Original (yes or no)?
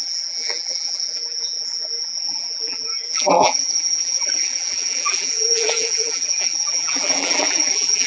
no